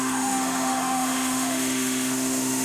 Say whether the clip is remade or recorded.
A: remade